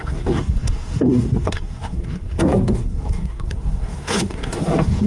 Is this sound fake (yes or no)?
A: yes